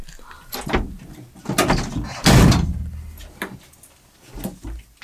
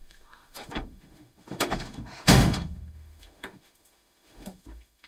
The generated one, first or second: second